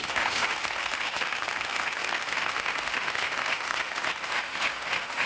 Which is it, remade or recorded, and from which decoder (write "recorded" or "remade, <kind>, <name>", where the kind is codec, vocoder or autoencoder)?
remade, autoencoder, DAC-VAE